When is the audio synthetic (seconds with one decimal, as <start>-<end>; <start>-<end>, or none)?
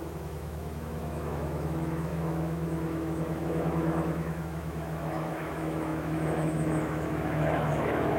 0.0-8.2